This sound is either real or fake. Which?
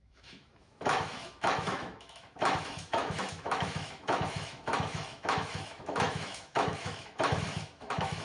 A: fake